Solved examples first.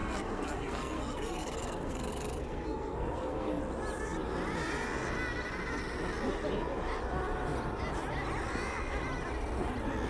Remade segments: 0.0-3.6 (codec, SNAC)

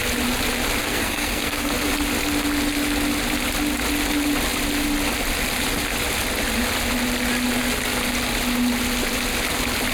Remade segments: 0.8-1.7 (codec, SNAC)

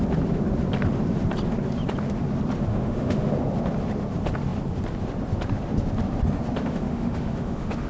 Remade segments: 2.7-3.3 (autoencoder, DAC-VAE); 6.6-7.9